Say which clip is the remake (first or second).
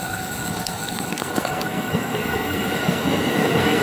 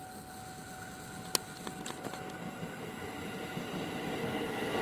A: first